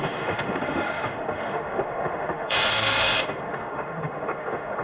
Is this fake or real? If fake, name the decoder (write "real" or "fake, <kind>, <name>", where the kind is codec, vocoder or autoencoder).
fake, autoencoder, DAC-VAE